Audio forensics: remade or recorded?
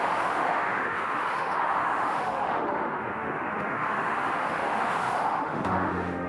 remade